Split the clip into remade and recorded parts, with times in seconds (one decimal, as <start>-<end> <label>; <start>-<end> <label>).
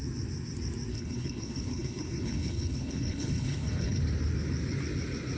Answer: 0.0-0.9 recorded; 0.9-4.0 remade; 4.0-5.4 recorded